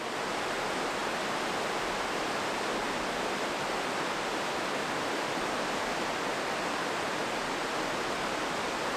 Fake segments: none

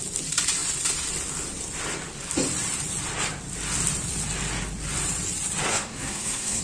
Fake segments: 5.6-6.6 (codec, SNAC)

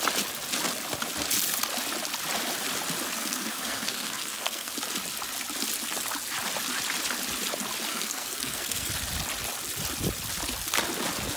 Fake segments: 3.2-4.7 (codec, SNAC); 7.9-8.9

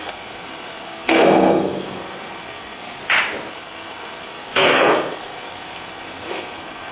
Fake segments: 0.0-3.0 (codec, SNAC); 3.5-6.9

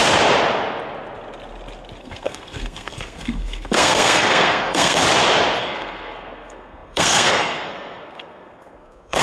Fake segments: 2.0-5.0 (codec, SNAC); 5.6-9.2